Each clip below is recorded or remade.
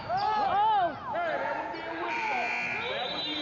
recorded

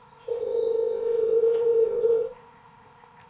remade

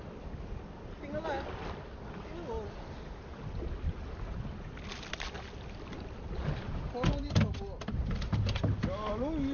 recorded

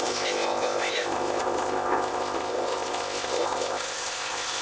remade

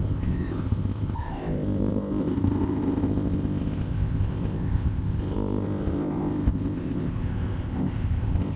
remade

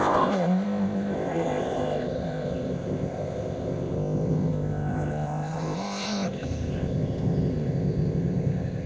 remade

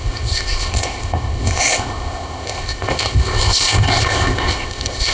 remade